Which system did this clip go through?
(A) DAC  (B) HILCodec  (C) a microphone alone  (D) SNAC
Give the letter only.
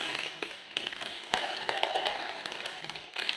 A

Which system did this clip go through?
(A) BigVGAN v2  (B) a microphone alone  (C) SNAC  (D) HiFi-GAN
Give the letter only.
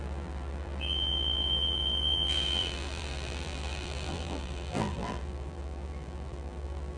A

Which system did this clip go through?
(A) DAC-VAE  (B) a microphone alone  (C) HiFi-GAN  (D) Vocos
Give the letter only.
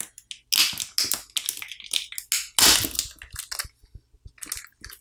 B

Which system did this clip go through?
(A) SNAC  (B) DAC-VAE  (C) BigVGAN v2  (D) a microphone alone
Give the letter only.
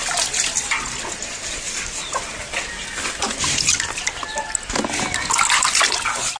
D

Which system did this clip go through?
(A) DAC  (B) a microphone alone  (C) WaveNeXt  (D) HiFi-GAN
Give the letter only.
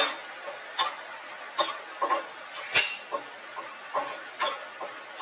B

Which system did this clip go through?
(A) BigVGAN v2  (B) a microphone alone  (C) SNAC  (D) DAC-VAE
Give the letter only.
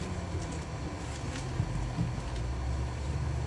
B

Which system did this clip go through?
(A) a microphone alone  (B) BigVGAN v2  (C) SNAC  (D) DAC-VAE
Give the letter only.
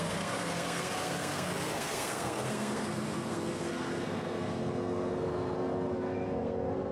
C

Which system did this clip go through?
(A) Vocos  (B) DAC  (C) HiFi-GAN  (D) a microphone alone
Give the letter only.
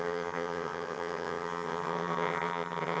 C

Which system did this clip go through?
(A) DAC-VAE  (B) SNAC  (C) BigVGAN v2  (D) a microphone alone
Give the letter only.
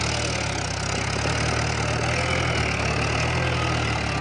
D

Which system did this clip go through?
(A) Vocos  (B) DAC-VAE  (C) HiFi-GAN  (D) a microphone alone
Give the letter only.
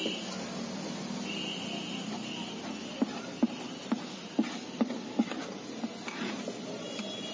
D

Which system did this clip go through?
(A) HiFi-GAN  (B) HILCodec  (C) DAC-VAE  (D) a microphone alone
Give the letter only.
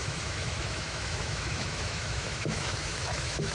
C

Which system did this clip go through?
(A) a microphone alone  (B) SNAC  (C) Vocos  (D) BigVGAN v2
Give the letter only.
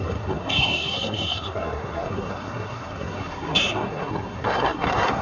B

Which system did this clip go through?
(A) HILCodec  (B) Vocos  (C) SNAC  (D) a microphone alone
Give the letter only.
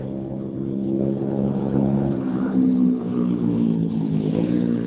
A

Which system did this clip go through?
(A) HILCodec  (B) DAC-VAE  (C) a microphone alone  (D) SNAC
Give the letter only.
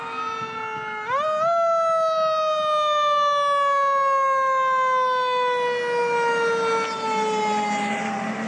C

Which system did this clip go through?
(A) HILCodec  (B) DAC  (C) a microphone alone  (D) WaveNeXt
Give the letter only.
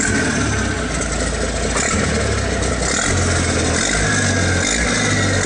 C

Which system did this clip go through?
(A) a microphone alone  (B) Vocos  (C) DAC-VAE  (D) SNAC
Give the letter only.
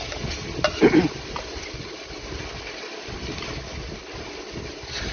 A